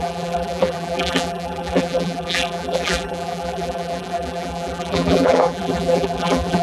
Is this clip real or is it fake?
fake